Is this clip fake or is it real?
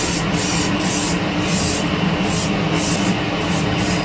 real